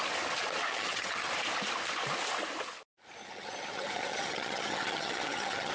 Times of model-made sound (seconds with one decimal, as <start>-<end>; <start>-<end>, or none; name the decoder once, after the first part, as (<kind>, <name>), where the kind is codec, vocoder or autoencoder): 0.7-1.3 (vocoder, HiFi-GAN); 3.2-5.7